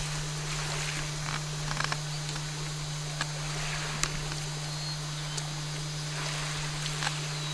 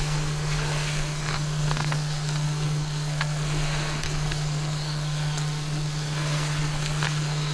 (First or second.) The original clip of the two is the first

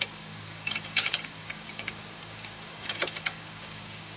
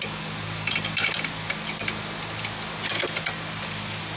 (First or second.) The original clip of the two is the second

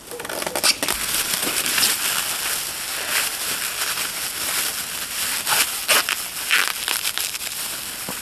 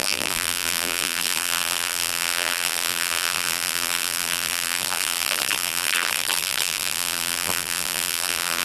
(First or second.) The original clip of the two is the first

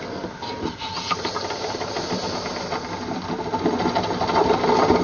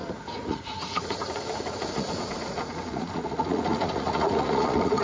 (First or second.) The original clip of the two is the first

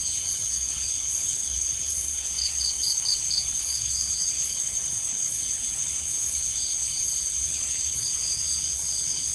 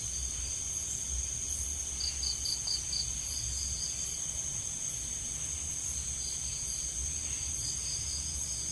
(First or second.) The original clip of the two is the second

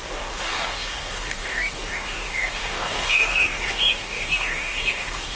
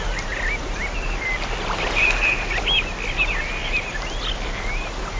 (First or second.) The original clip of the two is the second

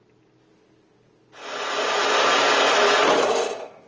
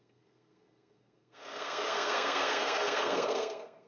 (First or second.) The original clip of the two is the first